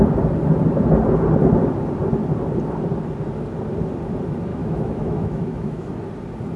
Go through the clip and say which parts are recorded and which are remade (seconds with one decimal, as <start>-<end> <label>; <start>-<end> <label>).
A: 0.0-4.5 recorded; 4.5-5.9 remade; 5.9-6.6 recorded